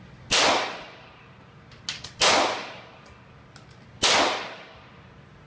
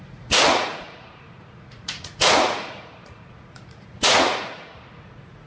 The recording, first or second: first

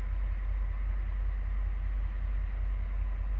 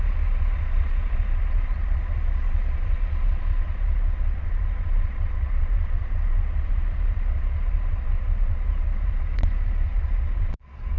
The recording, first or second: first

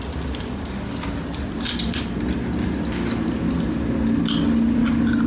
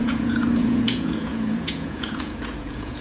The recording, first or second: first